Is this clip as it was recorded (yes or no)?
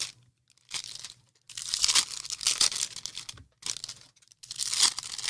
yes